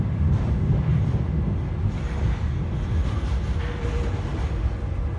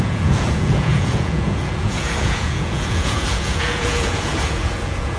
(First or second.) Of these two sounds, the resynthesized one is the second